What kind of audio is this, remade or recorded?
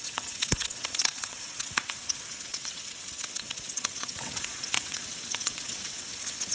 remade